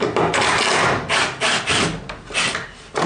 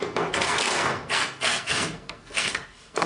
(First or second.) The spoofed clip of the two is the second